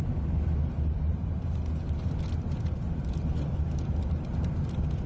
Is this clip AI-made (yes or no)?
no